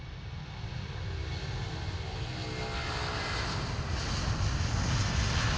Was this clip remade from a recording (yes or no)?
no